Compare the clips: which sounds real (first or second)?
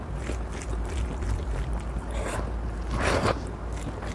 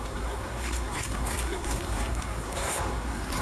first